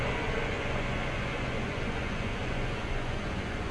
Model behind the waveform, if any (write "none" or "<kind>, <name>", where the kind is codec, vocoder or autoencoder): vocoder, Vocos